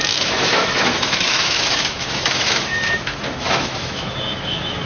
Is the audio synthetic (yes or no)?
yes